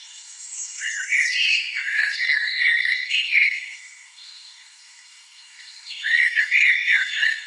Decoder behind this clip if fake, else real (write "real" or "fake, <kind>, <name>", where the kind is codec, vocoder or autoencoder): fake, codec, SNAC